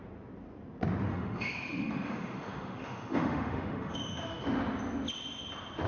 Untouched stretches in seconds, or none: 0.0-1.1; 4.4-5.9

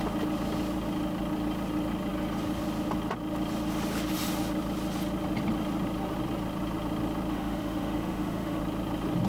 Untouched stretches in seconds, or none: 0.0-7.3; 8.6-9.3